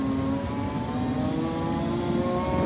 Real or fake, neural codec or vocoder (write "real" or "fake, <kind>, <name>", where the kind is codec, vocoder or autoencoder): real